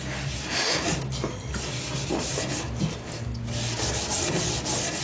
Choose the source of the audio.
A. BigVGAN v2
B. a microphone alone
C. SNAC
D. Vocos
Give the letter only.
B